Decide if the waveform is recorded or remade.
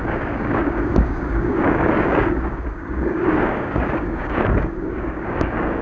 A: remade